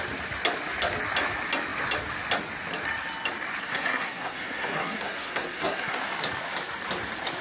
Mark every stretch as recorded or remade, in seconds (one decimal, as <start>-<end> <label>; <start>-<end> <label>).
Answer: 0.0-3.6 recorded; 3.6-6.0 remade; 6.0-7.4 recorded

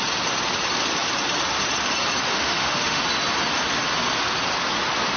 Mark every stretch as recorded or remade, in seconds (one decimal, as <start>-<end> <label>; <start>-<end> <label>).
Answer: 0.0-2.3 recorded; 2.3-3.0 remade; 3.0-5.2 recorded

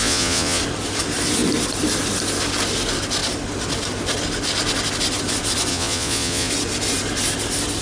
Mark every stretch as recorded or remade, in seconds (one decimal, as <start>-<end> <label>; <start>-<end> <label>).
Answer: 0.0-0.6 remade; 0.6-5.7 recorded; 5.7-6.5 remade; 6.5-7.8 recorded

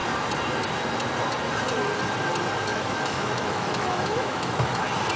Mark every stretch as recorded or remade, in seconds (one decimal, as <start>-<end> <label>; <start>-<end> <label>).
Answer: 0.0-2.7 recorded; 2.7-4.8 remade; 4.8-5.2 recorded

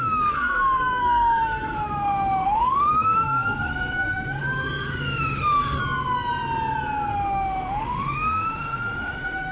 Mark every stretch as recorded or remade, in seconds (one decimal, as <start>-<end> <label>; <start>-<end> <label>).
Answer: 0.0-5.8 remade; 5.8-7.1 recorded; 7.1-9.5 remade

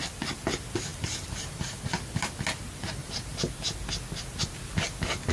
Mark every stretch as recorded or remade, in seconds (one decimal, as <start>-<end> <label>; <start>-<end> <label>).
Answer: 0.0-0.9 recorded; 0.9-1.8 remade; 1.8-3.0 recorded; 3.0-3.6 remade; 3.6-5.3 recorded

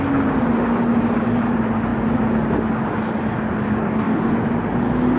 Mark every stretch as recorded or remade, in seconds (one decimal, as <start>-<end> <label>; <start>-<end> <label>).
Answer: 0.0-3.8 recorded; 3.8-4.3 remade; 4.3-5.2 recorded